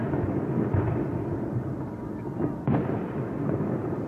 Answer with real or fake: real